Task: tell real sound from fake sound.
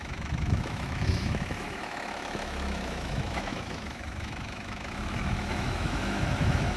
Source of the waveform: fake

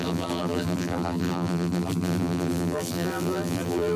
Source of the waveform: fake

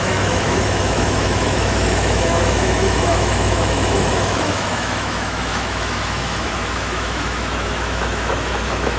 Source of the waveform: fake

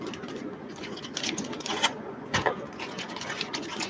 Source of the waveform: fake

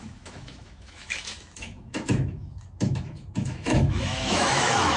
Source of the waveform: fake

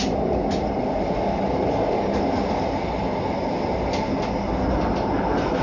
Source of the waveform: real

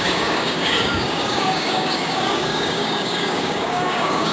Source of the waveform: fake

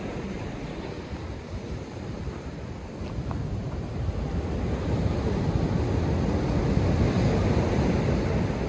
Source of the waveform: real